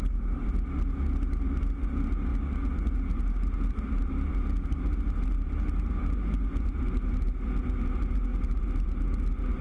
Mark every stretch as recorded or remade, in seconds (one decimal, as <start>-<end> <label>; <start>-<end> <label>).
0.0-9.6 recorded